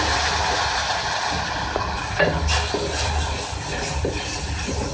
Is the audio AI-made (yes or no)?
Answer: no